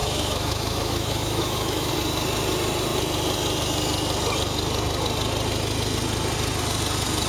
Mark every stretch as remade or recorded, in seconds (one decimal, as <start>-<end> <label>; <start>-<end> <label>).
0.0-1.9 remade; 1.9-7.3 recorded